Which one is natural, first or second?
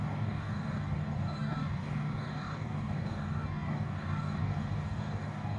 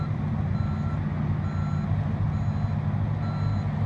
second